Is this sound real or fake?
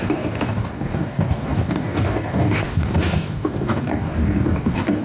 fake